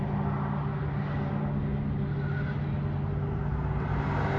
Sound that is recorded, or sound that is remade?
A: recorded